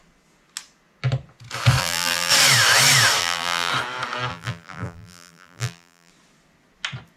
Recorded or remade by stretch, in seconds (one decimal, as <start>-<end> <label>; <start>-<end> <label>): 0.0-1.8 recorded; 1.8-2.3 remade; 2.3-3.2 recorded; 3.2-3.7 remade; 3.7-4.3 recorded; 4.3-6.1 remade; 6.1-7.2 recorded